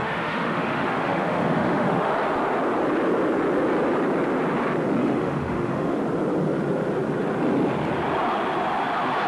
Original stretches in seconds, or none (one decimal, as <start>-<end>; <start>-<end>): 2.1-5.0; 6.0-9.3